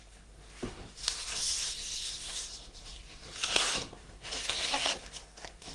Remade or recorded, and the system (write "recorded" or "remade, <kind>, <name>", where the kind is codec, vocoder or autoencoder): remade, codec, SNAC